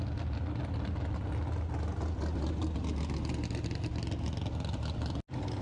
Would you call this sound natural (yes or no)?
yes